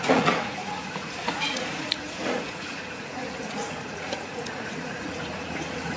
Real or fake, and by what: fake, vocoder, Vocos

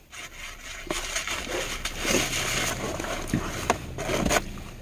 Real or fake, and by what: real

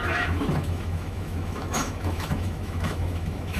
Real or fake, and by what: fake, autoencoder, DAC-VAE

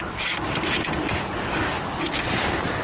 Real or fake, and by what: real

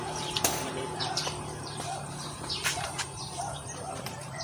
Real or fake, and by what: fake, vocoder, BigVGAN v2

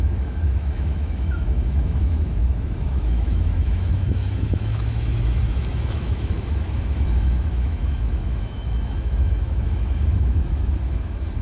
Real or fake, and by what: fake, autoencoder, DAC-VAE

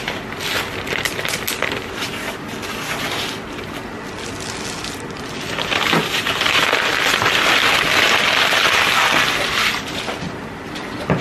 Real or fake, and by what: real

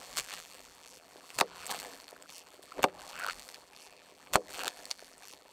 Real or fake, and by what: fake, vocoder, BigVGAN v2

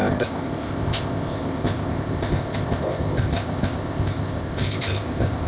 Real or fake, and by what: fake, codec, ZipCodec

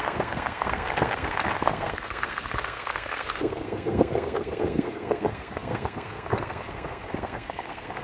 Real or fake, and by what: fake, codec, SNAC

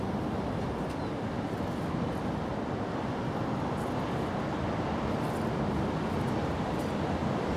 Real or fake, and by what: real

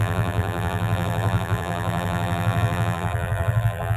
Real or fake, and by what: fake, vocoder, BigVGAN v2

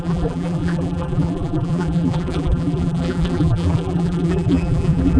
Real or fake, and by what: fake, vocoder, BigVGAN v2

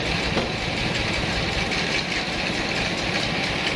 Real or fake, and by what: real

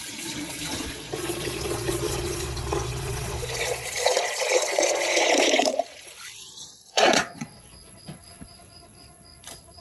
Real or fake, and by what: fake, vocoder, Vocos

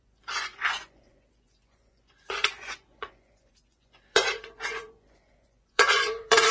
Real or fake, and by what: fake, vocoder, Vocos